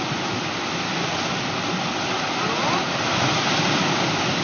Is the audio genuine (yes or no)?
yes